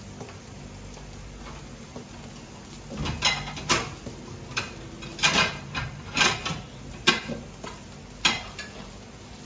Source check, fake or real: real